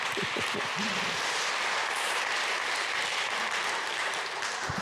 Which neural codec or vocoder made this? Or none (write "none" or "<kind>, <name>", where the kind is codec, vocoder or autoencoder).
none